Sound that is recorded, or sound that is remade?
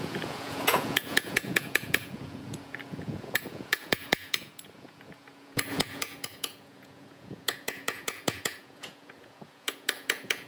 remade